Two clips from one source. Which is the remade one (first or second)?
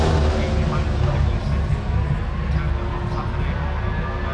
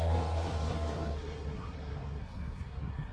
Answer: second